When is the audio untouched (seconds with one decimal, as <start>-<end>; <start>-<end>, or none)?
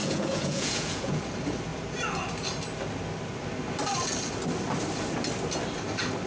1.2-6.3